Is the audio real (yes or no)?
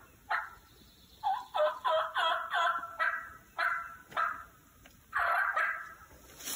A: yes